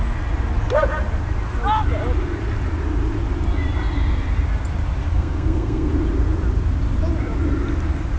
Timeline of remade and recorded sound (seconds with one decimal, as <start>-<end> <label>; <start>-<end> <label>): 0.0-5.1 recorded; 5.1-5.9 remade; 5.9-8.2 recorded